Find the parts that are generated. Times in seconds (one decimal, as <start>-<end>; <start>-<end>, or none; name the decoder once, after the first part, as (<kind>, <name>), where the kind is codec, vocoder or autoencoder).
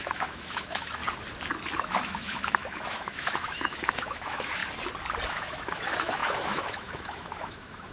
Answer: 0.0-1.0 (autoencoder, DAC-VAE); 1.8-4.6; 5.3-7.9